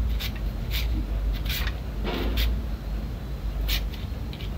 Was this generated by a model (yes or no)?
no